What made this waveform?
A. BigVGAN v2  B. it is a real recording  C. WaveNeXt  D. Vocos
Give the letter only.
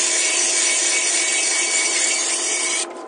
A